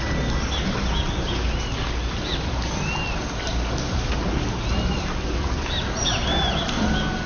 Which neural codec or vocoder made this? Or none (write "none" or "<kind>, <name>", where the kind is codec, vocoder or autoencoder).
none